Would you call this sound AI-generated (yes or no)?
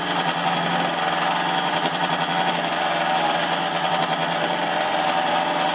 no